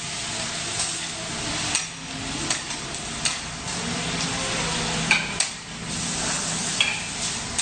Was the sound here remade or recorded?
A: recorded